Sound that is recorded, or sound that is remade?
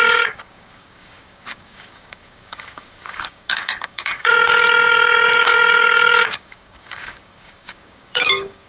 remade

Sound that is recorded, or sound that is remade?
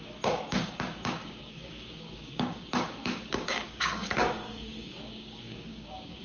remade